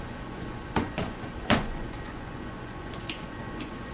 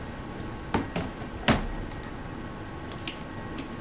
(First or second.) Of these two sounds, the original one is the second